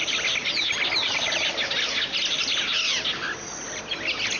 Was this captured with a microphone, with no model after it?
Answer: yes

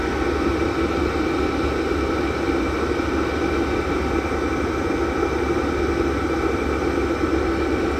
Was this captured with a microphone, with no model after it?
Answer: yes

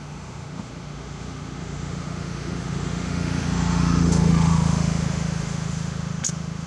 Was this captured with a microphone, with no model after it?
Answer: no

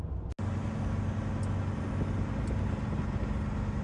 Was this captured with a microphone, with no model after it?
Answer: yes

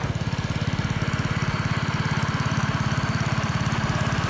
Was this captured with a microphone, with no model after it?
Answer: yes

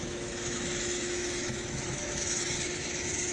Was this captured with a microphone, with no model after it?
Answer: no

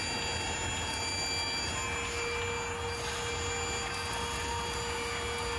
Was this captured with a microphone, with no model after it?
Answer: yes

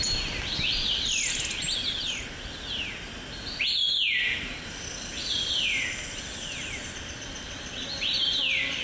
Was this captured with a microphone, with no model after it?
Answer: yes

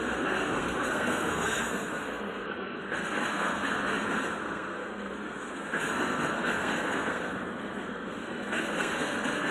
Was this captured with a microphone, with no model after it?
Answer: no